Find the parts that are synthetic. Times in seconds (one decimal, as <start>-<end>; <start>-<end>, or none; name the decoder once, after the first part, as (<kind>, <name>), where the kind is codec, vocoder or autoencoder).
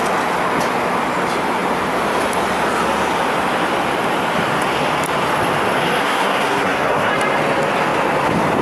6.0-7.1 (codec, SNAC)